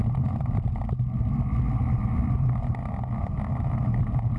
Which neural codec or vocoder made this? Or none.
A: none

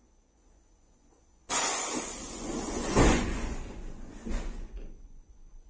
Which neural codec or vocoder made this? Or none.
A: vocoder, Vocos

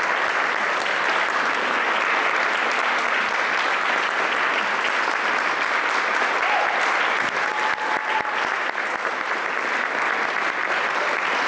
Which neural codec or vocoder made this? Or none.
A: none